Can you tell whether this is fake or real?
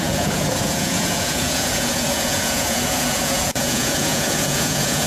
fake